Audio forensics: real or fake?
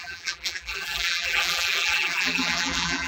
fake